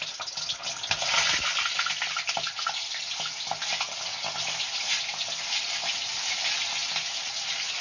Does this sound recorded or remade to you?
recorded